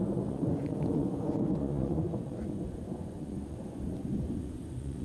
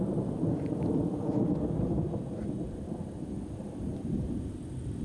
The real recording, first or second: second